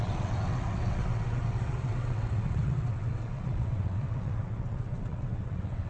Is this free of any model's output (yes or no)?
no